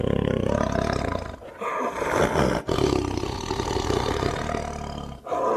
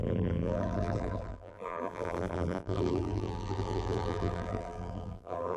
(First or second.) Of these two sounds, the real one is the first